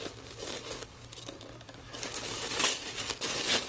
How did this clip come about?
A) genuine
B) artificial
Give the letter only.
B